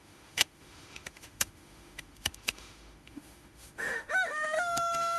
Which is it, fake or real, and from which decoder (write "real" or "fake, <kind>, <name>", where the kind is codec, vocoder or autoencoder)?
fake, autoencoder, DAC-VAE